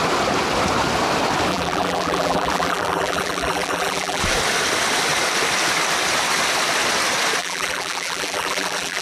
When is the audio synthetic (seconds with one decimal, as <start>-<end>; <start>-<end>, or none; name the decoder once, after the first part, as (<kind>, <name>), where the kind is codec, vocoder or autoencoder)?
1.5-4.2 (vocoder, BigVGAN v2); 7.4-9.0